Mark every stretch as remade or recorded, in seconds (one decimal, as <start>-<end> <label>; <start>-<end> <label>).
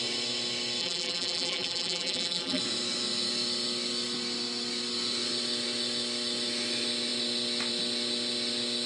0.0-0.8 recorded; 0.8-2.6 remade; 2.6-8.9 recorded